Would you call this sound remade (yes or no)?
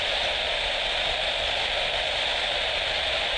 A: no